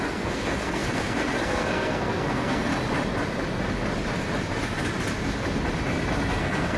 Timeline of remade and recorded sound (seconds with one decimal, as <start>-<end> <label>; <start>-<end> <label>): 0.0-2.7 remade; 2.7-6.3 recorded; 6.3-6.8 remade

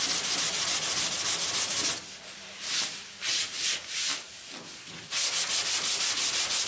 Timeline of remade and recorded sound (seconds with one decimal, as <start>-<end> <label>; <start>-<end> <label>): 0.0-6.7 recorded